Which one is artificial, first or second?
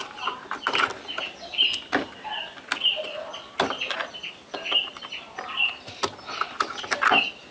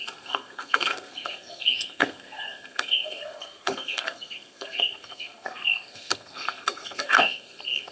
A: second